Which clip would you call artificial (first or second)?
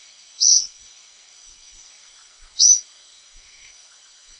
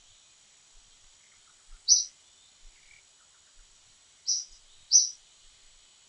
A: first